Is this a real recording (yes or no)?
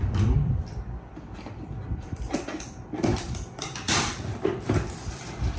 no